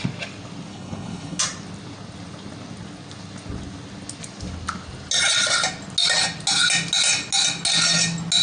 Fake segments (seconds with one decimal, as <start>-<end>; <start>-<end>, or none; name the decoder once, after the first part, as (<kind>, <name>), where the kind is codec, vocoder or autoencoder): 0.7-1.4 (codec, HILCodec)